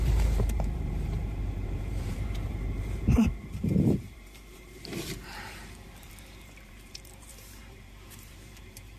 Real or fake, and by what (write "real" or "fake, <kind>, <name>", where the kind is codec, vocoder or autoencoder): fake, vocoder, BigVGAN v2